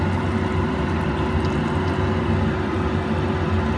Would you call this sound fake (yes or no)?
no